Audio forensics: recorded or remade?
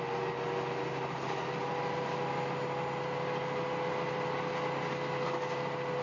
recorded